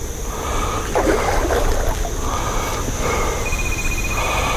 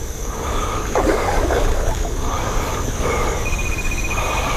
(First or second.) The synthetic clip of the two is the second